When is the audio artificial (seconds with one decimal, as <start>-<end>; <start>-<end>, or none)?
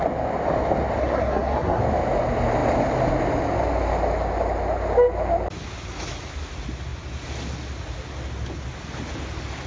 1.0-1.8